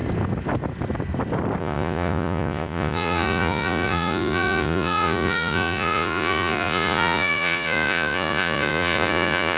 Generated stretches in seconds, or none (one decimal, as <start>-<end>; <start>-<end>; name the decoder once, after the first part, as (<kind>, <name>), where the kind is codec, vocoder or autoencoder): 1.6-9.6 (vocoder, Vocos)